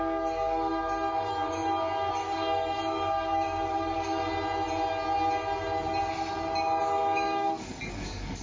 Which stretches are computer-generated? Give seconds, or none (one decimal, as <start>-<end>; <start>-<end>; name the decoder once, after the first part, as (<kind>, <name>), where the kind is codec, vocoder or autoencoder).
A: 0.0-4.2 (codec, DAC); 6.8-8.4